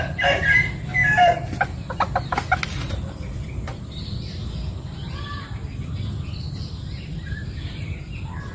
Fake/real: real